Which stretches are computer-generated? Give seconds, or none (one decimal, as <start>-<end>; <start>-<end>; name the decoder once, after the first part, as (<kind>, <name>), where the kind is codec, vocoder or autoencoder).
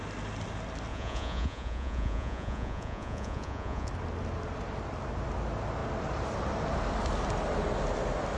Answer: 0.9-3.9 (vocoder, Vocos)